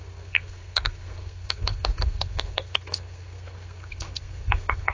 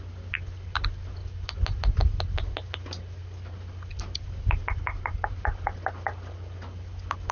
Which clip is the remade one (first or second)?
first